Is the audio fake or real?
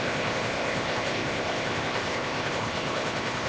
fake